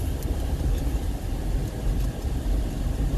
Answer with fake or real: fake